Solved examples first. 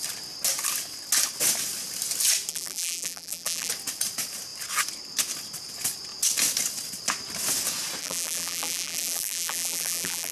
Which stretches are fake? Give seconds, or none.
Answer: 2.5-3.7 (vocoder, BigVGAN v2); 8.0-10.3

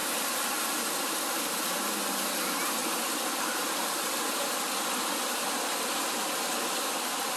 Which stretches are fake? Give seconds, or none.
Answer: none

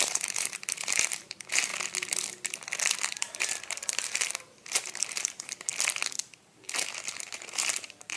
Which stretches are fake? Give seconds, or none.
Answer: 0.0-1.7 (vocoder, BigVGAN v2); 2.9-5.7; 6.5-8.2